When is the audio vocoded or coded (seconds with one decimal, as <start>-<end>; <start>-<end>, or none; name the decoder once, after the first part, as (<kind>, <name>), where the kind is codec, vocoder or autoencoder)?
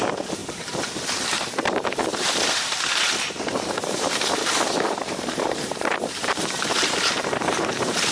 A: 0.0-8.1 (vocoder, BigVGAN v2)